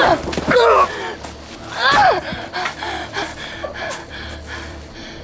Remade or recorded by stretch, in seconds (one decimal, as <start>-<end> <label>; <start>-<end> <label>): 0.0-5.2 remade